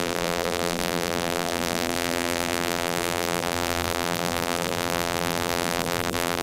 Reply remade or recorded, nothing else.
remade